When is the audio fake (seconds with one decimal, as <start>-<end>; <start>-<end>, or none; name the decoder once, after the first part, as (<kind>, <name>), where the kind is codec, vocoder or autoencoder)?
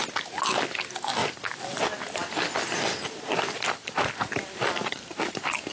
none